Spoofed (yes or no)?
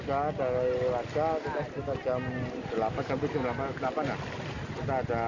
no